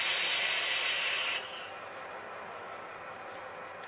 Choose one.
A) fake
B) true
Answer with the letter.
B